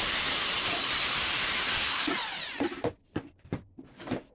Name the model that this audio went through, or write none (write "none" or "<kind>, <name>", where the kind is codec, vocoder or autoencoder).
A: none